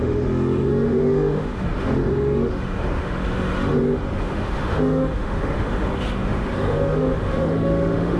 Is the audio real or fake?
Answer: fake